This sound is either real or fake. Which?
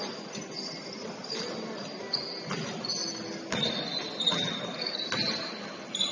real